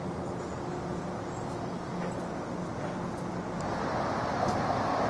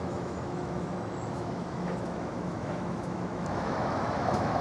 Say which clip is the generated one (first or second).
second